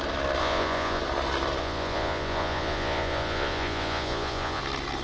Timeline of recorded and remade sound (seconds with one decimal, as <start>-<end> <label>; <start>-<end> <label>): 0.0-0.4 recorded; 0.4-1.0 remade; 1.0-1.6 recorded; 1.6-4.6 remade; 4.6-5.0 recorded